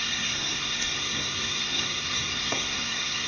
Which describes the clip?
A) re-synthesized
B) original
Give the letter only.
A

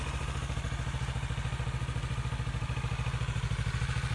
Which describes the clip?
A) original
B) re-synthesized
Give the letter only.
A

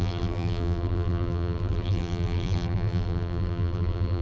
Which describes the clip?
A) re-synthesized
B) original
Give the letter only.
A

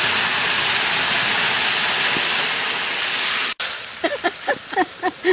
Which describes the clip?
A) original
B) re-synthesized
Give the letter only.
A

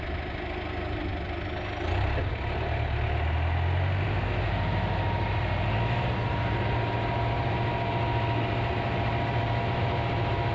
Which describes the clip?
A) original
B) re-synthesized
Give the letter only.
A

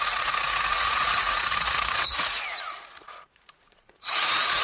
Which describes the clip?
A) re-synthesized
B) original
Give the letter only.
A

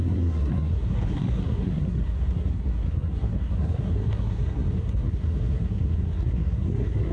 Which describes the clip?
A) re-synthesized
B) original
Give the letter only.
A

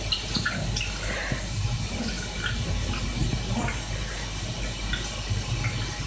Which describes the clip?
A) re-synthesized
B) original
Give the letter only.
B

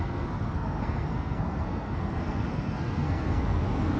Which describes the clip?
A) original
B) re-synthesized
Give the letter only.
B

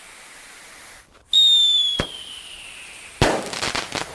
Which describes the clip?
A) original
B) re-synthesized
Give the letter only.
A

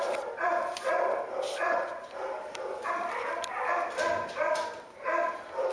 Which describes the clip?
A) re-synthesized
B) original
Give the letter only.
A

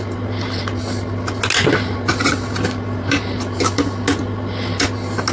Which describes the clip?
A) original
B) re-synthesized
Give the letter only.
A